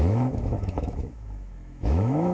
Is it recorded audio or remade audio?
remade